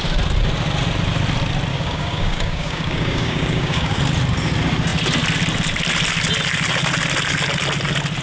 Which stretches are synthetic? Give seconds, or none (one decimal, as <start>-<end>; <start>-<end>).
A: 1.7-4.0